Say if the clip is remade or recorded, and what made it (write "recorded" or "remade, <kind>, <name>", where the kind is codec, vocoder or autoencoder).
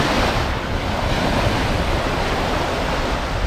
recorded